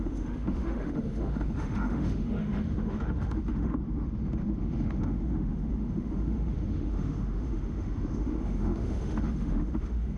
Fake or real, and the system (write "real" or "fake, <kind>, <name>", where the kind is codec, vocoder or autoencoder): fake, autoencoder, DAC-VAE